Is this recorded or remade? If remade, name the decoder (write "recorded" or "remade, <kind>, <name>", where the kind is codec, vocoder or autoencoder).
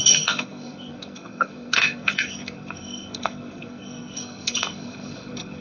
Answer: remade, codec, SNAC